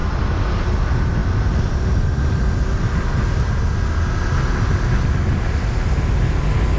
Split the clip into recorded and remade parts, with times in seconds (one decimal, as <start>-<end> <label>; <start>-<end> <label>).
0.0-6.8 recorded